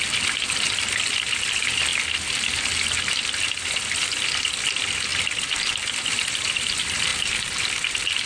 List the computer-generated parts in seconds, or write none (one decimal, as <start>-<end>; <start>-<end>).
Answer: 0.0-1.9; 2.8-7.1; 7.9-8.3